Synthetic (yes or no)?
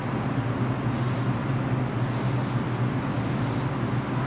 no